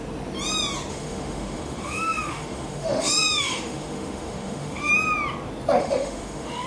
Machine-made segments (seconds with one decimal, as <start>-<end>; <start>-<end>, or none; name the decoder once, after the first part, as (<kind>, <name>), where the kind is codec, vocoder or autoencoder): 0.9-4.9 (autoencoder, DAC-VAE); 5.8-6.7